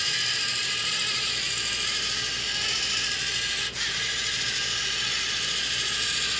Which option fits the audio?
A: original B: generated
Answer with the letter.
A